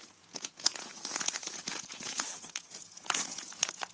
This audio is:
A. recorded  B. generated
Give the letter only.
B